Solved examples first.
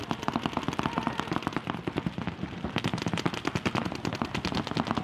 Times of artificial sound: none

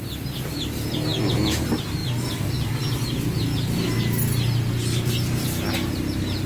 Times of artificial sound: none